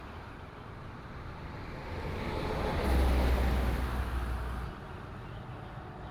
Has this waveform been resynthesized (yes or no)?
no